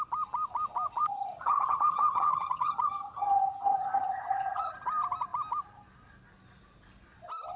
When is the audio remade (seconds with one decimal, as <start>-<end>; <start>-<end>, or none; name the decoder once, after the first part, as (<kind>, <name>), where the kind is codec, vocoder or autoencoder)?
1.0-4.7 (vocoder, HiFi-GAN)